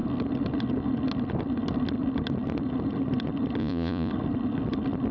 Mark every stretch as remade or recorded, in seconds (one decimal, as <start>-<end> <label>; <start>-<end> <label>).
0.0-3.6 recorded; 3.6-4.1 remade; 4.1-5.1 recorded